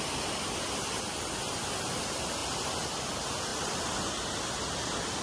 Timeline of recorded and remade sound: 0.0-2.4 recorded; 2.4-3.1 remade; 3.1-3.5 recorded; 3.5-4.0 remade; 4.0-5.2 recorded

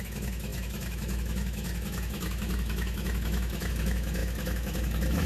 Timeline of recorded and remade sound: 0.0-5.3 remade

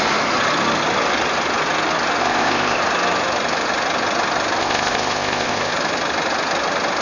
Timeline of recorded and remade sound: 0.0-2.2 recorded; 2.2-2.8 remade; 2.8-4.6 recorded; 4.6-5.7 remade; 5.7-7.0 recorded

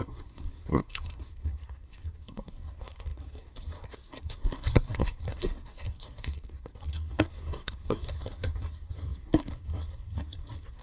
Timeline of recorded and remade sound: 0.0-10.8 remade

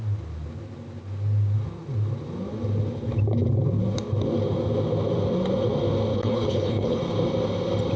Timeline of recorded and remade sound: 0.0-6.1 recorded; 6.1-7.0 remade; 7.0-8.0 recorded